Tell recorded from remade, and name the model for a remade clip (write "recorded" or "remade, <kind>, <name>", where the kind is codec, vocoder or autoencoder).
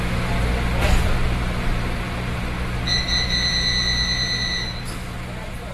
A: recorded